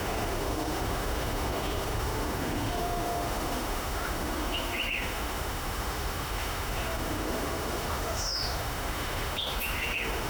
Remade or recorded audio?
remade